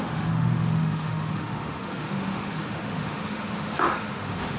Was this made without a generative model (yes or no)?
no